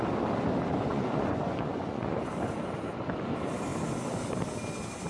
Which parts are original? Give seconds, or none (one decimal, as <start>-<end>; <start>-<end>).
0.0-0.9; 2.3-5.1